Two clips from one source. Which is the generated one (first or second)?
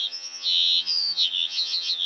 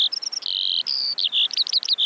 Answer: first